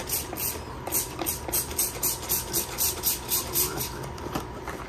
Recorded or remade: recorded